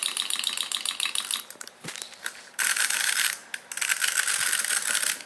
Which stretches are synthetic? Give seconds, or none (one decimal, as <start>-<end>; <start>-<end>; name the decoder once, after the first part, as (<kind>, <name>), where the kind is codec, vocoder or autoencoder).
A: 1.5-3.4 (vocoder, BigVGAN v2); 4.3-5.3